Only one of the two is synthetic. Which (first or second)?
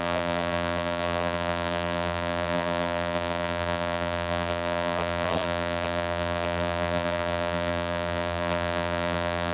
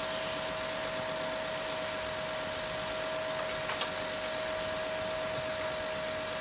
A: first